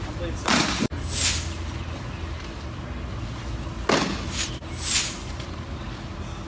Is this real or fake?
real